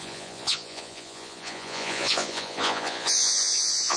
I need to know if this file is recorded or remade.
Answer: remade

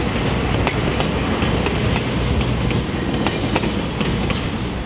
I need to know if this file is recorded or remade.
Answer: recorded